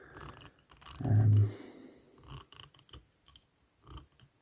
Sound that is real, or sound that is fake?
real